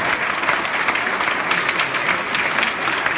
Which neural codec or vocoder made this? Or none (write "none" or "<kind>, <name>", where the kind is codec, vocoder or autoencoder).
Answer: none